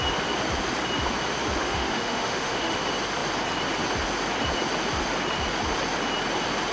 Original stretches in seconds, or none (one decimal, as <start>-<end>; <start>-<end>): 0.0-1.6; 2.8-6.7